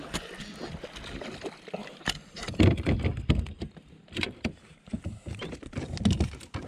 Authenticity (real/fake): real